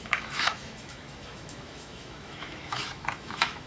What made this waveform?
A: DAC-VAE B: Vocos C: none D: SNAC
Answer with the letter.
A